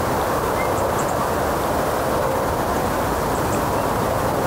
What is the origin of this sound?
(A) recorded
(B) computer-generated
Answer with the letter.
B